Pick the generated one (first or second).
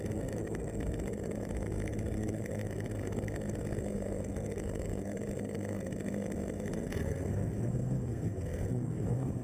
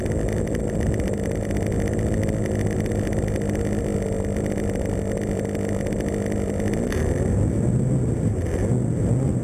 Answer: first